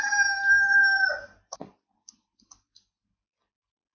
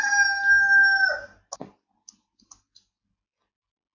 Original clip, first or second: second